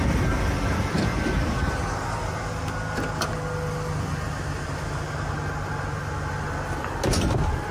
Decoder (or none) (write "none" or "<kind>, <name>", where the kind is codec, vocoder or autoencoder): none